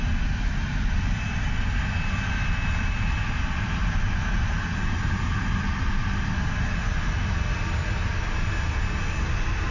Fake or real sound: real